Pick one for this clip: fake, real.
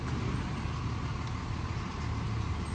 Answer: real